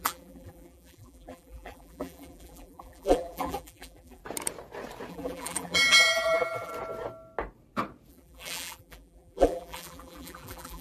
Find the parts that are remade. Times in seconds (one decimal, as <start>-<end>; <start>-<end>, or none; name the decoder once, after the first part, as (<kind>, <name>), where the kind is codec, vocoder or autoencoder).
0.0-4.2 (vocoder, BigVGAN v2); 5.1-6.7; 8.1-10.8